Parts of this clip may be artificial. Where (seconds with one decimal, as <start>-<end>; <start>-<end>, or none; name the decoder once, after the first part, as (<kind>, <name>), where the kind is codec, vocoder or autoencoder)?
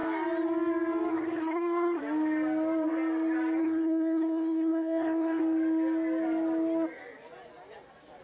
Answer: 1.1-2.0 (codec, SNAC); 3.6-5.4